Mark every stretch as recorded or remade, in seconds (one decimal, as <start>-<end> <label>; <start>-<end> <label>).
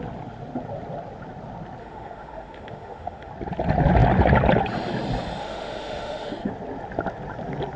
0.0-1.8 recorded; 1.8-3.3 remade; 3.3-5.4 recorded; 5.4-6.5 remade; 6.5-7.8 recorded